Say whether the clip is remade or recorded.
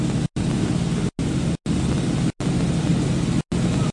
recorded